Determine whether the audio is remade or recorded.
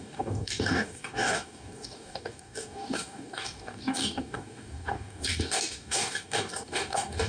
remade